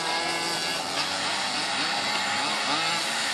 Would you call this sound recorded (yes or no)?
yes